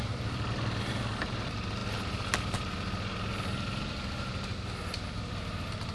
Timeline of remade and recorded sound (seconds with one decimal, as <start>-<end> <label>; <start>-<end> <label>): 0.0-5.9 recorded